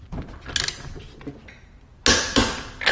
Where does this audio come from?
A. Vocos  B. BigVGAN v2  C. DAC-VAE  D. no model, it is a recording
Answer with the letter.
D